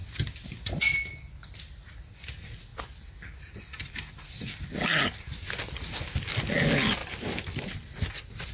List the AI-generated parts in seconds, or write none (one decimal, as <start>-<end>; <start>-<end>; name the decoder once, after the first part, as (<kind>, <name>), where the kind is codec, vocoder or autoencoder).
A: none